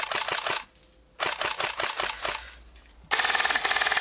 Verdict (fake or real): real